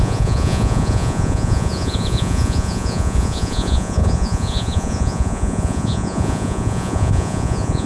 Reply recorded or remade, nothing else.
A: remade